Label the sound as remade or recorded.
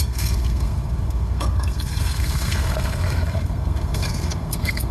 remade